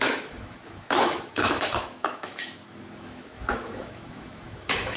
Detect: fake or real fake